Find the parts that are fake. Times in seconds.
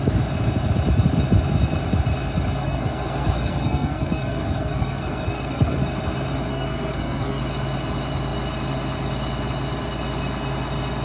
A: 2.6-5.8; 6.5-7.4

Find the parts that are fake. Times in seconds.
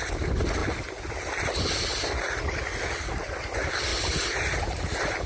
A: none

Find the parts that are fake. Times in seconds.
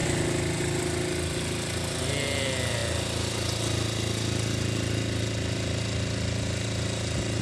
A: none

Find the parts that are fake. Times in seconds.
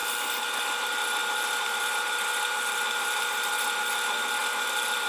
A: 1.2-3.8; 4.4-5.1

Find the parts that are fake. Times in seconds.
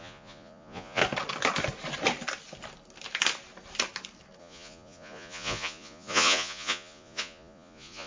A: 0.0-1.0; 4.4-8.1